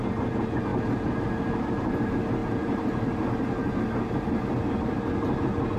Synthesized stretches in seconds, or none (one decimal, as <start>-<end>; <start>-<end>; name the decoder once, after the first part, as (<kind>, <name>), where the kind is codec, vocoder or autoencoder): none